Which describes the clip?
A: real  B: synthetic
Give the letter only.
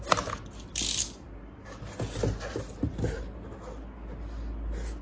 A